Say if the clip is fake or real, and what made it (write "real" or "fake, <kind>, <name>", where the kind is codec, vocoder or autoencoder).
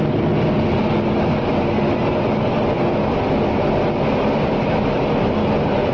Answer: real